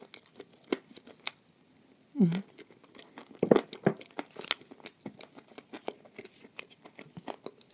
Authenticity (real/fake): real